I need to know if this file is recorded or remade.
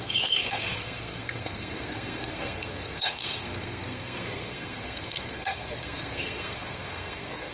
remade